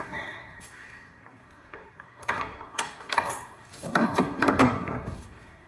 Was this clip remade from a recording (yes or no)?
yes